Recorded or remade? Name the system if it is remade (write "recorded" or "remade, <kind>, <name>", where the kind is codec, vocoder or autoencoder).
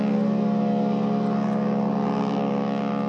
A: recorded